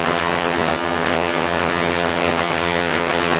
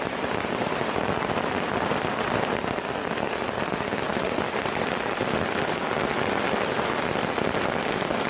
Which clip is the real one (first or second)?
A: second